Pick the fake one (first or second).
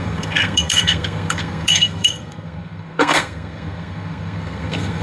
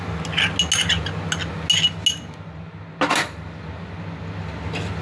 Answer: first